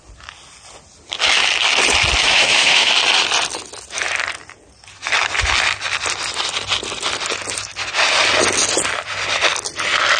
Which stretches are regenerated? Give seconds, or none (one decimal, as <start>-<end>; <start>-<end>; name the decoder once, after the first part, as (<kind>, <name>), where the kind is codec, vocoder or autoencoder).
2.2-2.9 (autoencoder, DAC-VAE)

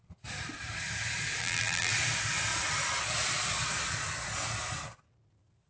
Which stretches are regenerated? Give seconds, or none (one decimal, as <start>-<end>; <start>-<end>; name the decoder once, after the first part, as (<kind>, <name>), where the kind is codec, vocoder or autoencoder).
1.4-1.9 (vocoder, BigVGAN v2)

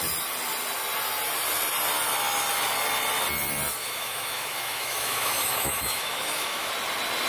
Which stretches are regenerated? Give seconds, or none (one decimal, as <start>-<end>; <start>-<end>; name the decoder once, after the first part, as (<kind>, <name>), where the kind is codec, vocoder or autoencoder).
3.8-6.7 (autoencoder, DAC-VAE)

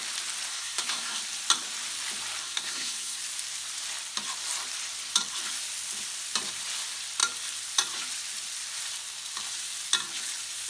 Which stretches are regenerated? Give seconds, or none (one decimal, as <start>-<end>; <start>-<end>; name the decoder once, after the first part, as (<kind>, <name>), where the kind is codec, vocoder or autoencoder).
0.5-1.2 (codec, SNAC); 2.4-3.2

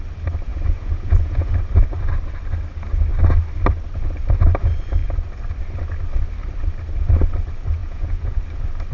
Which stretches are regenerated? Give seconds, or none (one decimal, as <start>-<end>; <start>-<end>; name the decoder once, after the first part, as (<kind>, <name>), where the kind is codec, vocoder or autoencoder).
0.5-1.5 (vocoder, Vocos); 7.8-8.4

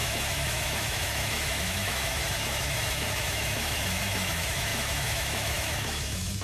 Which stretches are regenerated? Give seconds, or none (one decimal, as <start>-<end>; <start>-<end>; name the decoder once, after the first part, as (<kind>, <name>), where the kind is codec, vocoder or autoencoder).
0.0-6.4 (autoencoder, DAC-VAE)